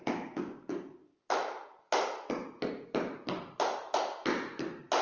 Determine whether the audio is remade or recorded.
recorded